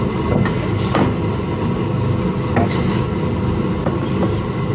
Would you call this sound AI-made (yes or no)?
no